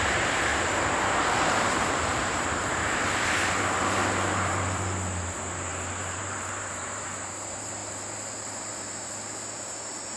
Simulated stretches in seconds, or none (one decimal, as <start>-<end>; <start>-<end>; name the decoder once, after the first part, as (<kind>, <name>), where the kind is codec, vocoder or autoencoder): 0.0-10.2 (vocoder, BigVGAN v2)